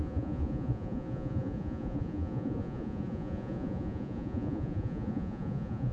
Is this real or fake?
fake